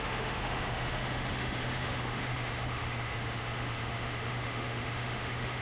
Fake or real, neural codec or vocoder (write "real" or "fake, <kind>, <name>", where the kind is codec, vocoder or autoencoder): fake, autoencoder, DAC-VAE